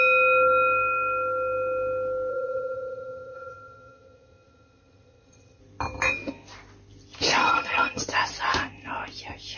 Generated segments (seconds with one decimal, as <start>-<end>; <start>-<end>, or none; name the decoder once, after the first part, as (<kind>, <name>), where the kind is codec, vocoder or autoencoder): 2.3-5.6 (vocoder, HiFi-GAN); 7.4-8.0